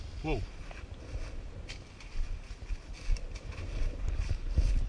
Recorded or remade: recorded